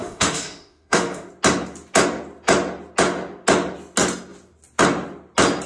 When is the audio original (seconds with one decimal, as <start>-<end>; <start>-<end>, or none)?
1.3-5.7